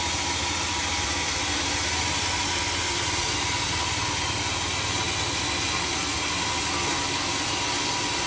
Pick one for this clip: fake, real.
real